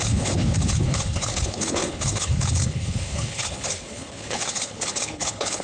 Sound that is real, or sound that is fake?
fake